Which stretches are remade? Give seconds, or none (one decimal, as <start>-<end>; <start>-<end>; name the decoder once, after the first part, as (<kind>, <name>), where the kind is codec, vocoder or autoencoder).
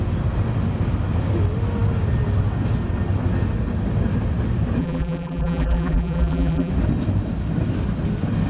4.8-6.7 (vocoder, BigVGAN v2)